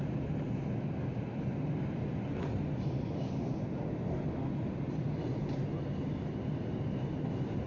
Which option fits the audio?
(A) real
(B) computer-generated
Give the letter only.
A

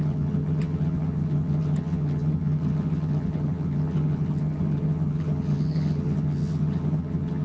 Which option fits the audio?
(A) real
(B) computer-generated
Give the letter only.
B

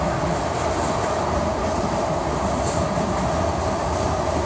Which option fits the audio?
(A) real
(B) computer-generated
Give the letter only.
A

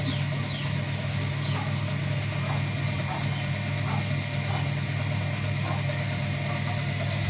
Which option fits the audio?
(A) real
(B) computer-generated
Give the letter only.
A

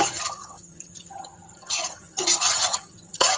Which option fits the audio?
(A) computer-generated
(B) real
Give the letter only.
A